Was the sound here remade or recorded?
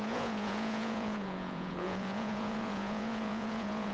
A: remade